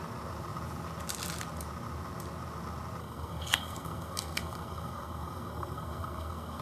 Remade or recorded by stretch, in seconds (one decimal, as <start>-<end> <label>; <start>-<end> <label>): 0.0-3.0 recorded; 3.0-6.6 remade